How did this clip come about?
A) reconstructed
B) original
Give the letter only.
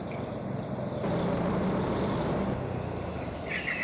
B